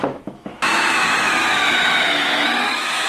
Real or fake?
fake